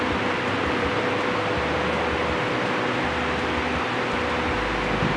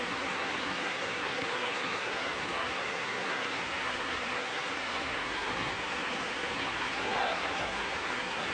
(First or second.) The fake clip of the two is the second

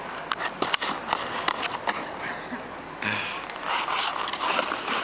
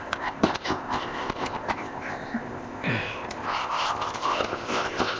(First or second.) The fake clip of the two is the second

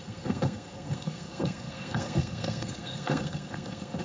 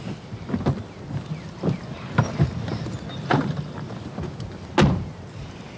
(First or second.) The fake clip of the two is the first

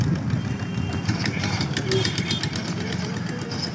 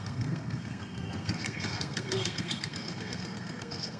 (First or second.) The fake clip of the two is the second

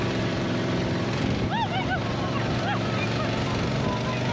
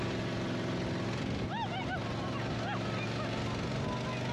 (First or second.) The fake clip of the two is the first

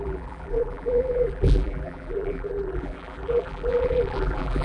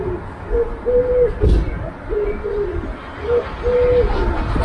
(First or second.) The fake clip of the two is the first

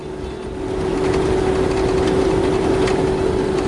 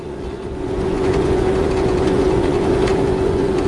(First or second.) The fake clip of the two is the second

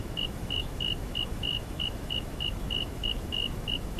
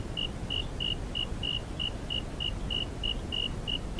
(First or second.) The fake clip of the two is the first